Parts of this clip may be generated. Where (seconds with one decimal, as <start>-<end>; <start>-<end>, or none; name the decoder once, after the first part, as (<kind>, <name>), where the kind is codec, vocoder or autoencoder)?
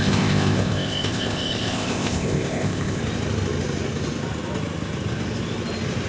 0.0-3.0 (codec, ZipCodec)